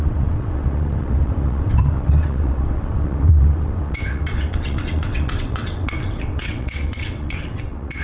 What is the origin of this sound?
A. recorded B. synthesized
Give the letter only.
B